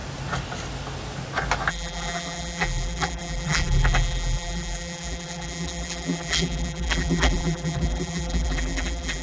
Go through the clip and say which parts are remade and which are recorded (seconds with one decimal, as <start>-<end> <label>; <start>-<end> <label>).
0.0-1.7 recorded; 1.7-9.2 remade